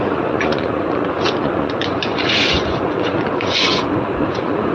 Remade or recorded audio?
remade